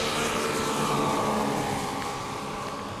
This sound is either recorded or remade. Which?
recorded